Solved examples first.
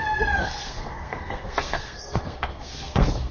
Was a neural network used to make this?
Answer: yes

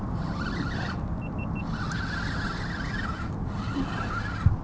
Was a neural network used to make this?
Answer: no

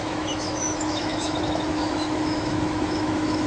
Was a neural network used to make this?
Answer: yes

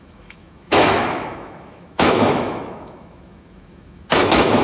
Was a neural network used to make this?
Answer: yes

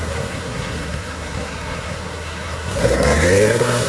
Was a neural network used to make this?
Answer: yes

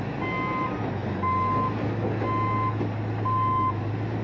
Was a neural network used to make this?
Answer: no